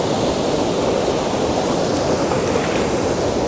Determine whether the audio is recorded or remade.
recorded